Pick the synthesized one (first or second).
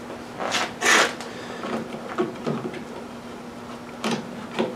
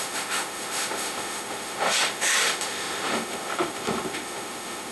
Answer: second